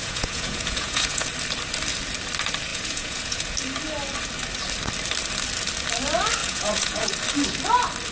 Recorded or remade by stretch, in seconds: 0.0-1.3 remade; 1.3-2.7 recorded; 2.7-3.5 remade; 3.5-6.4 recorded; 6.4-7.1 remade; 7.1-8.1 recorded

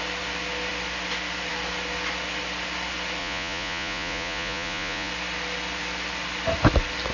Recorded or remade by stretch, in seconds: 0.0-3.2 recorded; 3.2-5.1 remade; 5.1-7.1 recorded

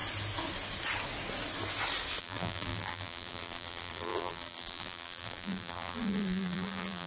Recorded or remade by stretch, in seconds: 0.0-2.2 recorded; 2.2-7.1 remade

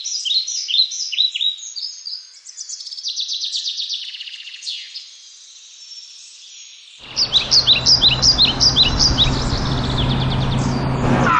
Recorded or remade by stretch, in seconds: 0.0-0.4 recorded; 0.4-2.9 remade; 2.9-3.3 recorded; 3.3-5.1 remade; 5.1-11.4 recorded

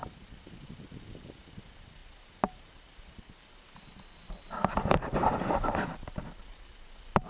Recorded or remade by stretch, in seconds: 0.0-7.3 recorded

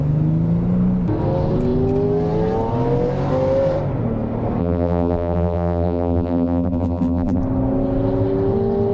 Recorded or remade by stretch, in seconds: 0.0-4.6 recorded; 4.6-7.4 remade; 7.4-8.9 recorded